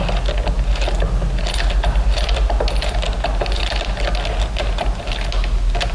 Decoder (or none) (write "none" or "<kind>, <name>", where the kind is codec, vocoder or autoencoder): none